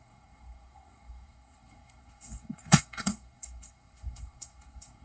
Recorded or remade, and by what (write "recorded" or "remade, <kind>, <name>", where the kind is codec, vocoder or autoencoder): remade, codec, SNAC